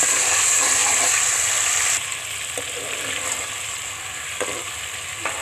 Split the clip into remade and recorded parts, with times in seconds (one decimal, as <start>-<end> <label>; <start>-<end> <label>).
0.0-5.4 recorded